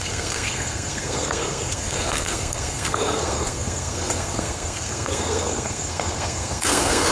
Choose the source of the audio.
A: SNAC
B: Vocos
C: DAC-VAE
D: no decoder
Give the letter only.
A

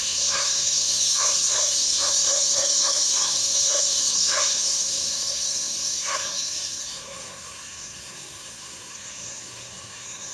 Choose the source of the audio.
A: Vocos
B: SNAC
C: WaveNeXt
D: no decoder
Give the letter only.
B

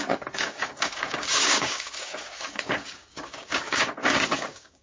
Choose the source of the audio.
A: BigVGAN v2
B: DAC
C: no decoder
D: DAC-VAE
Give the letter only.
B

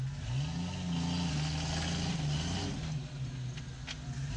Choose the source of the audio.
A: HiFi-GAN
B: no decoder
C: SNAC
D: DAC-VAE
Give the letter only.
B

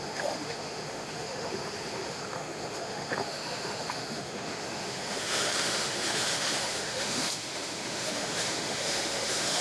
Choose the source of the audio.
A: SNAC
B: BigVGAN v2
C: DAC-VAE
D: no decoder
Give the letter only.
C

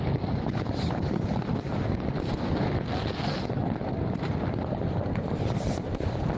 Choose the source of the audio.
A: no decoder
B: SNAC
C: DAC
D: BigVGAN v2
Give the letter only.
A